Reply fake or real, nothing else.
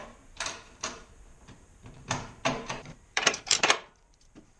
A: fake